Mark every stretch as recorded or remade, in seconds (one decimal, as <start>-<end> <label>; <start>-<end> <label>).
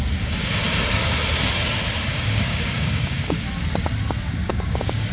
0.0-2.1 recorded; 2.1-3.4 remade; 3.4-4.5 recorded; 4.5-5.1 remade